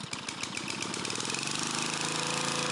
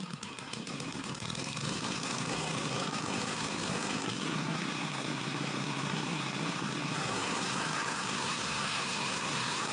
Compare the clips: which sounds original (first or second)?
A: first